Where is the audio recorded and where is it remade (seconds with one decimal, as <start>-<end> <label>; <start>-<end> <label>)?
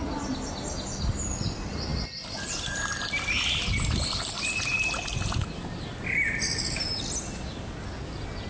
0.0-8.5 recorded